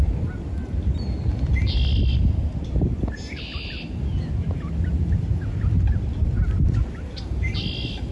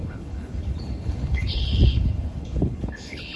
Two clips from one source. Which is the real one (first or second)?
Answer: first